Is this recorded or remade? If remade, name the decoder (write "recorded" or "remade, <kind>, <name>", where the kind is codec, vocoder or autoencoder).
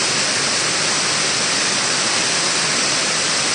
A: recorded